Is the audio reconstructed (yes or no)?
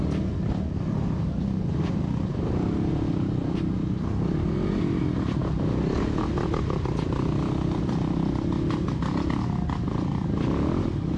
no